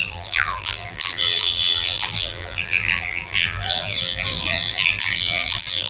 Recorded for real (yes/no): no